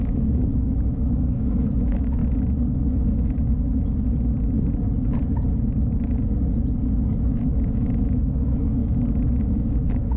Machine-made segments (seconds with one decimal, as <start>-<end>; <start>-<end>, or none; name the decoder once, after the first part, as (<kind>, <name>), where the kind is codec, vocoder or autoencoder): 0.0-2.2 (autoencoder, DAC-VAE); 7.4-8.8; 9.4-10.2